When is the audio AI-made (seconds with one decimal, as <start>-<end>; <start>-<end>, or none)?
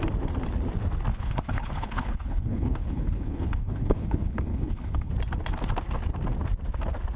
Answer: 1.1-5.1